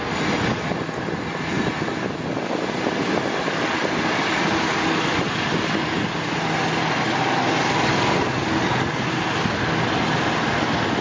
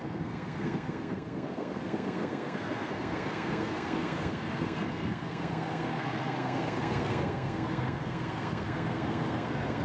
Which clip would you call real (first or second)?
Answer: first